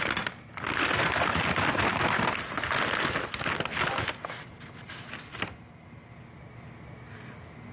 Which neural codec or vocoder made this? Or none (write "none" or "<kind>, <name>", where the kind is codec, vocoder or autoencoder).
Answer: none